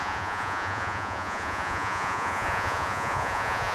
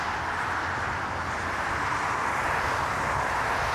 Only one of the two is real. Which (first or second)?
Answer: second